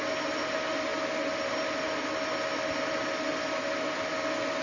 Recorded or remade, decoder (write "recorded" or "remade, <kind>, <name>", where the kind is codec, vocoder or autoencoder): recorded